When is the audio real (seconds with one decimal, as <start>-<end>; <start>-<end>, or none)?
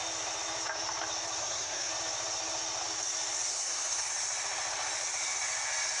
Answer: 0.0-1.4; 1.9-3.5; 4.1-6.0